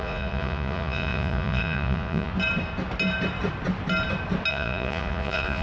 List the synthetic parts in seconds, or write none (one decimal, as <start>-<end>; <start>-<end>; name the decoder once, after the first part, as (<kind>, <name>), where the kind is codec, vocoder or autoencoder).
0.0-2.3 (vocoder, Vocos); 4.5-5.6